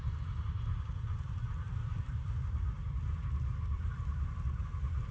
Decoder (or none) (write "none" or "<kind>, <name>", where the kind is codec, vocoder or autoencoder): vocoder, BigVGAN v2